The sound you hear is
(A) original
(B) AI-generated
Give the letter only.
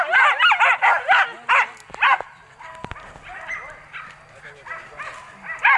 A